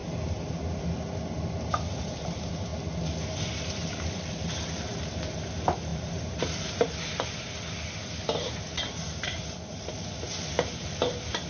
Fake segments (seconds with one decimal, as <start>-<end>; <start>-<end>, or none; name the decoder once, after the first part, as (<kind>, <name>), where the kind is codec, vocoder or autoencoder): 0.0-2.7 (vocoder, BigVGAN v2); 4.0-11.5